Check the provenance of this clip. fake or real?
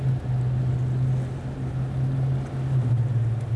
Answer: real